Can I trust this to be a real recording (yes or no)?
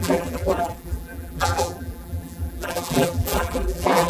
no